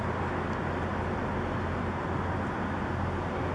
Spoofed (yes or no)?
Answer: no